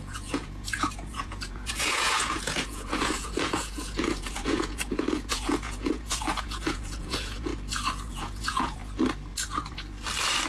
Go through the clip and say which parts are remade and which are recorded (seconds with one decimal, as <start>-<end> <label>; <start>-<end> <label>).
0.0-7.5 remade; 7.5-8.1 recorded; 8.1-8.8 remade; 8.8-10.5 recorded